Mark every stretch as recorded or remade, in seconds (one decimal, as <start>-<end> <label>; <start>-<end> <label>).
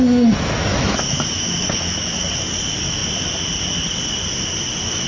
0.0-0.7 recorded; 0.7-2.3 remade; 2.3-5.1 recorded